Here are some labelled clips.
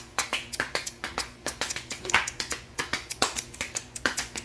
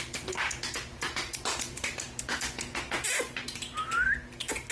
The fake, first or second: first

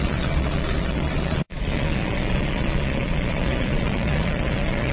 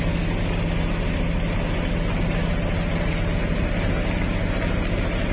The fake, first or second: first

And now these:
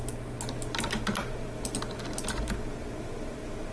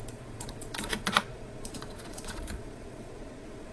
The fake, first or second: second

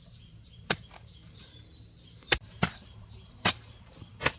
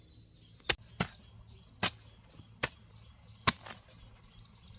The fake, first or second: first